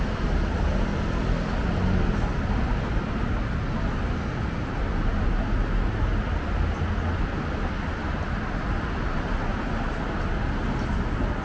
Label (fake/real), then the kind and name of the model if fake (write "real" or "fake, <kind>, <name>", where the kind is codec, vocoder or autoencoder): real